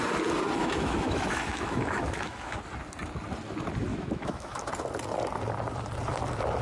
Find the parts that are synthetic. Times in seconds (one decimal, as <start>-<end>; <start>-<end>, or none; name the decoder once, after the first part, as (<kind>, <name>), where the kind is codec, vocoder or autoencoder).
0.6-2.6 (autoencoder, DAC-VAE); 3.9-4.6